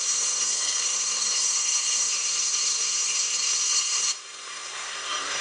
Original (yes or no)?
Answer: no